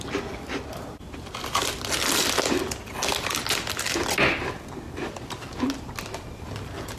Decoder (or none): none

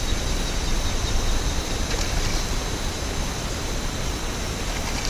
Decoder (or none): vocoder, BigVGAN v2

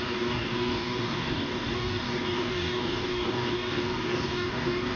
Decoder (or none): codec, DAC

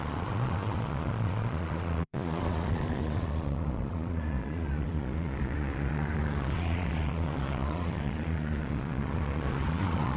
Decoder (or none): vocoder, Vocos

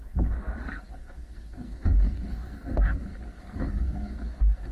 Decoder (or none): codec, SNAC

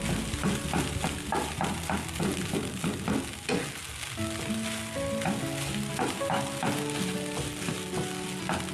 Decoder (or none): none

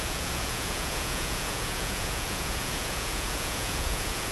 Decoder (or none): vocoder, Vocos